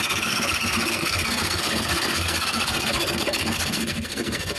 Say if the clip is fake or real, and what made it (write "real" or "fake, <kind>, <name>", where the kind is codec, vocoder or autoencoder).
fake, codec, SNAC